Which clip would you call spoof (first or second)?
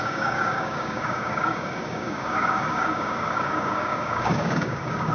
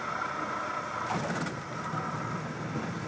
first